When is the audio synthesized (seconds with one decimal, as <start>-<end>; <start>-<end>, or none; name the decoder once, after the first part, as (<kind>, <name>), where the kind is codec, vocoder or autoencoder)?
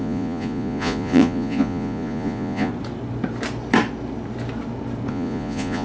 0.0-2.7 (vocoder, Vocos); 5.1-5.8